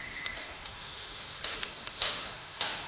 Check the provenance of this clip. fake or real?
fake